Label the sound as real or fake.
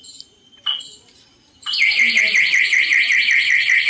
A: real